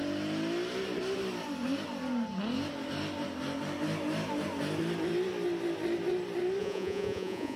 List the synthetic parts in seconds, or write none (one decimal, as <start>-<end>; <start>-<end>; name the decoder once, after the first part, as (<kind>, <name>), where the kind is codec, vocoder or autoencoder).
6.6-7.6 (vocoder, Vocos)